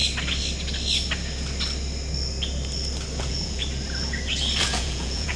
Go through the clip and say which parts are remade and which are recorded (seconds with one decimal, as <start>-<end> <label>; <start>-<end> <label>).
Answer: 0.0-3.2 recorded; 3.2-3.6 remade; 3.6-4.6 recorded; 4.6-5.4 remade